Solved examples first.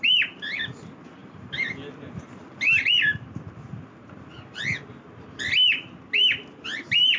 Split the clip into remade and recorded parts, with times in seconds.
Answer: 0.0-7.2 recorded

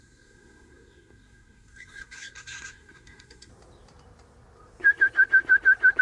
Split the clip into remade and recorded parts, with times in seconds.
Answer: 0.0-3.5 remade; 3.5-6.0 recorded